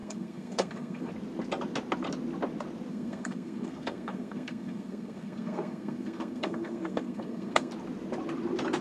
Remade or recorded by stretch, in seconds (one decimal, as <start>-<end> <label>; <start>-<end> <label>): 0.0-1.1 remade; 1.1-2.9 recorded; 2.9-7.7 remade; 7.7-8.8 recorded

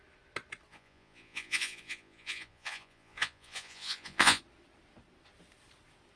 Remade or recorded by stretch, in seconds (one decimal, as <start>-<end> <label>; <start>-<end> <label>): 0.0-0.7 recorded; 0.7-4.4 remade; 4.4-6.2 recorded

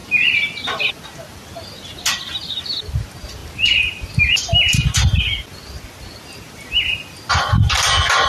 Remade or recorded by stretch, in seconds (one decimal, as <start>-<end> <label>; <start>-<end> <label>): 0.0-8.3 recorded

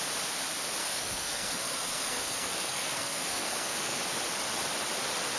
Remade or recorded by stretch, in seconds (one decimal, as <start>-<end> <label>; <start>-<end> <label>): 0.0-0.8 recorded; 0.8-4.0 remade; 4.0-5.4 recorded

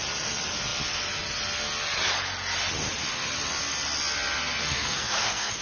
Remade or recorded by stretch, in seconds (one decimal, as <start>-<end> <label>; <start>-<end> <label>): 0.0-4.6 recorded; 4.6-5.6 remade